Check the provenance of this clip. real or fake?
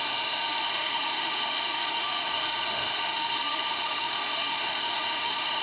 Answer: fake